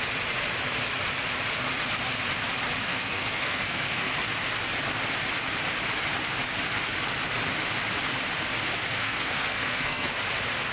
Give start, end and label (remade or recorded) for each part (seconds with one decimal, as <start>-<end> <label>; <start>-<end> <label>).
0.0-2.9 recorded; 2.9-4.1 remade; 4.1-9.0 recorded; 9.0-10.1 remade; 10.1-10.7 recorded